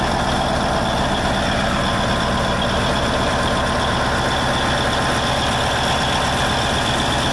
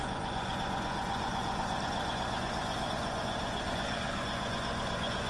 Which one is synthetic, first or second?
second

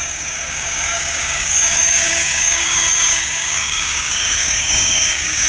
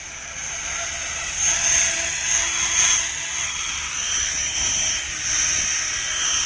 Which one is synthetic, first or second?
first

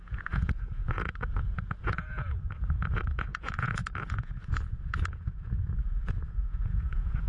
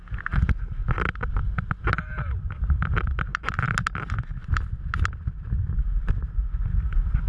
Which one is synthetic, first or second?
first